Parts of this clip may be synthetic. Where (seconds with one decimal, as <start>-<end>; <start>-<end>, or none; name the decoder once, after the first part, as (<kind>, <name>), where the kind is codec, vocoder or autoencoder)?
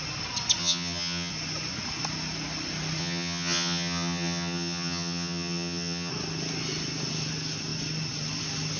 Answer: 0.6-1.3 (vocoder, HiFi-GAN); 3.0-6.1